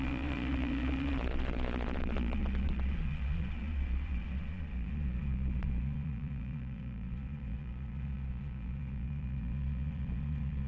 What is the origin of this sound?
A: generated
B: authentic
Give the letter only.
A